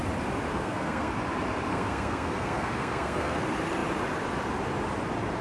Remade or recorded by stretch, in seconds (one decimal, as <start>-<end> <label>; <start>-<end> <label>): 0.0-0.5 recorded; 0.5-1.1 remade; 1.1-1.7 recorded; 1.7-3.4 remade; 3.4-5.4 recorded